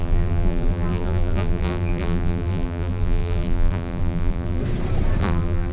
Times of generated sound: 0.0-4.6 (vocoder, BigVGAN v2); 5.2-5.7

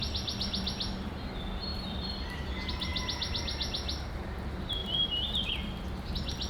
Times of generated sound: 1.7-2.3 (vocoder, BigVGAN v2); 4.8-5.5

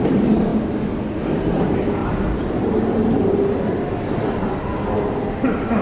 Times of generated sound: 0.0-0.5 (vocoder, BigVGAN v2); 1.2-2.0; 5.3-5.8

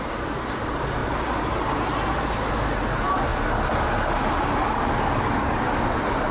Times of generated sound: 1.0-2.5 (vocoder, BigVGAN v2)

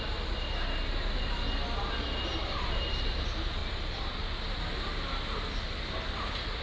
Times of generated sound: 2.4-3.2 (vocoder, BigVGAN v2); 3.6-4.6

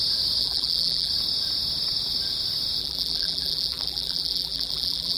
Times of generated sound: 0.4-1.1 (vocoder, BigVGAN v2); 2.8-5.2

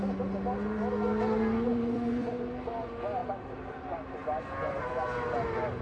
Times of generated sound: 1.7-2.3 (vocoder, BigVGAN v2); 3.2-4.8

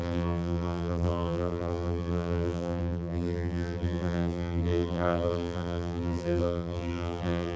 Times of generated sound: 0.0-7.6 (vocoder, BigVGAN v2)